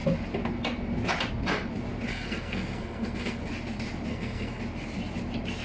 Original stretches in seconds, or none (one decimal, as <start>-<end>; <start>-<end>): 0.0-2.1; 3.4-4.1; 4.6-5.6

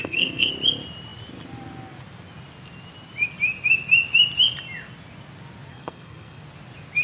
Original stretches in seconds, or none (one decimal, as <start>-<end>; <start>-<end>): 0.5-5.7; 6.4-7.0

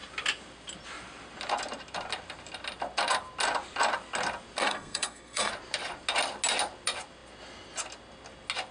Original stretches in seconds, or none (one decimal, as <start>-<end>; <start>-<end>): 0.0-4.6; 5.5-8.7

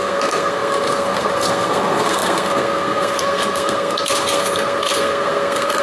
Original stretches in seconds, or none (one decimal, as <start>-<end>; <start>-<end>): none

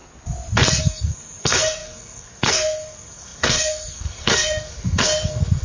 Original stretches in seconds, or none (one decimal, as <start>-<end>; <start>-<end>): 0.0-0.8